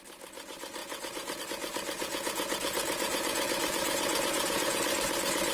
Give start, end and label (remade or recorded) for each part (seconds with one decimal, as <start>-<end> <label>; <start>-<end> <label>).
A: 0.0-0.8 recorded; 0.8-1.4 remade; 1.4-2.0 recorded; 2.0-4.8 remade; 4.8-5.5 recorded

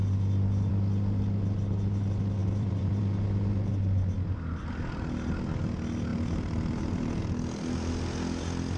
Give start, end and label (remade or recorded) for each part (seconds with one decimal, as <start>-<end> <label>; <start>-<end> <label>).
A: 0.0-2.4 recorded; 2.4-3.0 remade; 3.0-6.1 recorded; 6.1-7.2 remade; 7.2-8.8 recorded

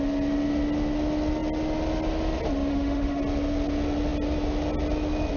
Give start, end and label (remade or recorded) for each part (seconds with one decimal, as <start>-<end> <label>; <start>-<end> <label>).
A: 0.0-2.7 recorded; 2.7-3.2 remade; 3.2-5.4 recorded

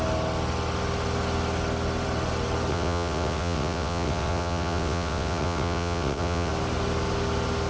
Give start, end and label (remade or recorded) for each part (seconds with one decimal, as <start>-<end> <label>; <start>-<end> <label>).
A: 0.0-2.7 recorded; 2.7-6.5 remade; 6.5-7.7 recorded